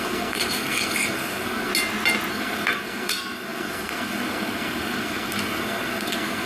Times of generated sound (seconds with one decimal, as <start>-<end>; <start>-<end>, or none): 0.0-1.7; 2.3-6.5